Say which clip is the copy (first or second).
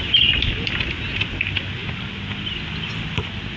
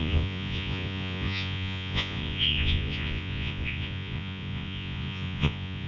second